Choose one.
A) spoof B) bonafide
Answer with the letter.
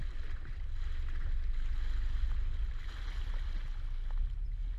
B